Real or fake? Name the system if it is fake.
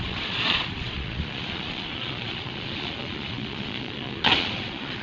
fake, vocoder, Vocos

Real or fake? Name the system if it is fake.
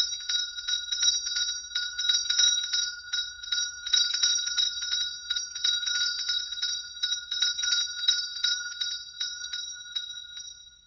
fake, vocoder, Vocos